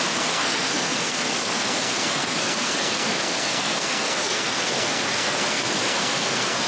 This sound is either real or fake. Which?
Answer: fake